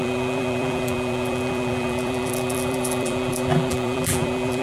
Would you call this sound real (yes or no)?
no